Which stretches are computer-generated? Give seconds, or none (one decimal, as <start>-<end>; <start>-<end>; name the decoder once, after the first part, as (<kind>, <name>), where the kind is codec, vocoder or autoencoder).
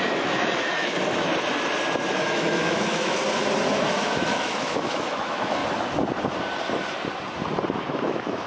0.0-1.3 (autoencoder, DAC-VAE); 2.1-3.2; 3.9-5.6; 7.9-8.5